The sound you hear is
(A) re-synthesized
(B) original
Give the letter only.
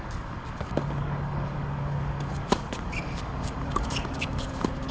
A